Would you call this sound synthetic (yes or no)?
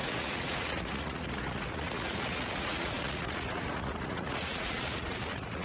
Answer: yes